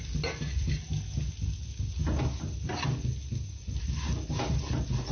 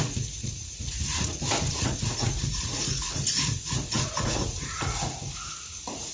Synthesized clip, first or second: second